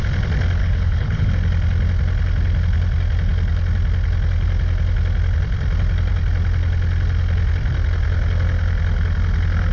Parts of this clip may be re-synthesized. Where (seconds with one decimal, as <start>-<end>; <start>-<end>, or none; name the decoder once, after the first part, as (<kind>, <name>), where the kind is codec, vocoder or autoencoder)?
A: 0.6-1.3 (codec, HILCodec)